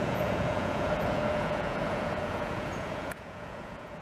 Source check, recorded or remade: remade